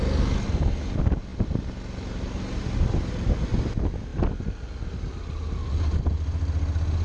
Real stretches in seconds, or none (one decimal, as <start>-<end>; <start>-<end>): 0.0-7.0